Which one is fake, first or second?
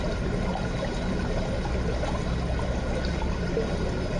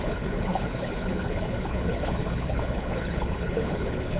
second